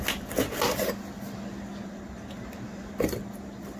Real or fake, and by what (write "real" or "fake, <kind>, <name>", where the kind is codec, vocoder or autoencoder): real